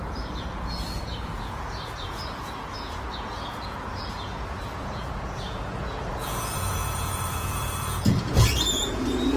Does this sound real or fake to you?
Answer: fake